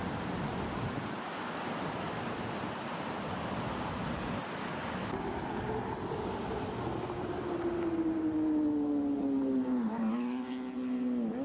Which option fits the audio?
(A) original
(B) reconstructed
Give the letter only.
A